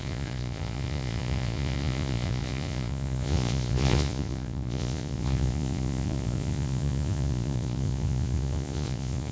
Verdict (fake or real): fake